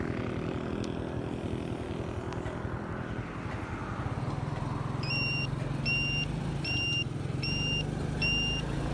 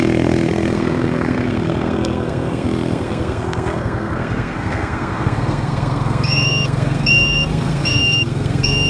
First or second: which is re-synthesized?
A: second